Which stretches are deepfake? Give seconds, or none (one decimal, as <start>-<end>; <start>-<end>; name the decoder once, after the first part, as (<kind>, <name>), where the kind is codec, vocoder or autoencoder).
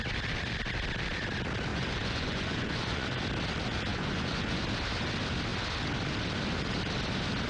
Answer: 1.7-3.1 (vocoder, Vocos); 3.9-4.6